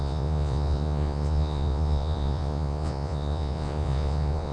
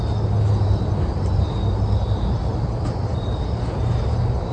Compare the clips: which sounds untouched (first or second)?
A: second